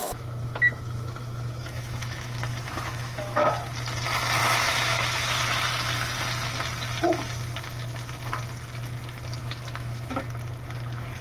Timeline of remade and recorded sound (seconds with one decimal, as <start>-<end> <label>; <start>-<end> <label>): 0.0-3.5 remade; 3.5-4.4 recorded; 4.4-5.4 remade; 5.4-9.4 recorded; 9.4-10.2 remade; 10.2-11.2 recorded